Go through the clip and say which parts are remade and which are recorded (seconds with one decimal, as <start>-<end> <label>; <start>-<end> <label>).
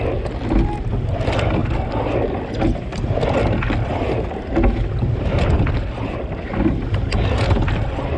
0.0-8.2 recorded